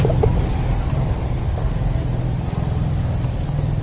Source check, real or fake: real